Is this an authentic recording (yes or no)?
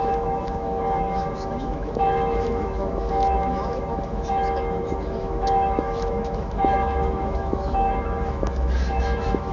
no